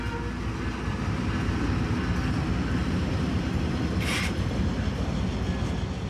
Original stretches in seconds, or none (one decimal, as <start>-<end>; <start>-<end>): 0.0-2.8; 4.6-6.1